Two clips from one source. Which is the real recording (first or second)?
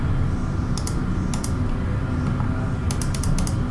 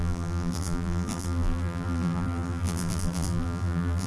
first